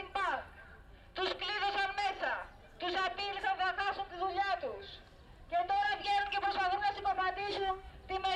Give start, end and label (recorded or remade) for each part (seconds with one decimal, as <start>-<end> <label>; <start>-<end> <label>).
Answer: 0.0-7.4 recorded; 7.4-7.9 remade; 7.9-8.4 recorded